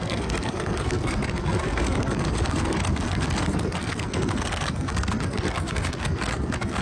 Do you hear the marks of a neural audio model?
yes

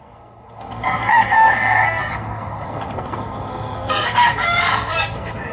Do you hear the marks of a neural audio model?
yes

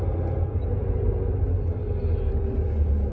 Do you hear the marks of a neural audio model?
no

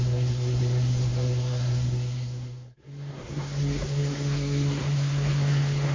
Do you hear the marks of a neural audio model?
yes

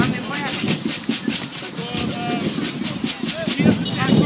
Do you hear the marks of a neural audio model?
no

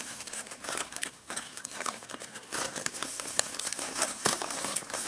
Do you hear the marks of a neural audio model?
yes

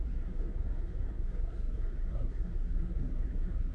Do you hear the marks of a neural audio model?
yes